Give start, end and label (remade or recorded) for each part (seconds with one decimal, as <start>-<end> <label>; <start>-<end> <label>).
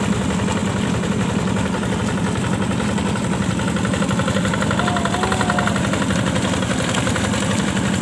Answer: 0.0-8.0 recorded